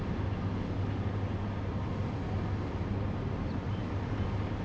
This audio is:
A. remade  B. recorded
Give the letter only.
B